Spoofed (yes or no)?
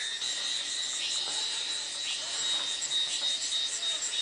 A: no